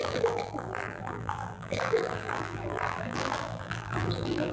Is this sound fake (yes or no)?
yes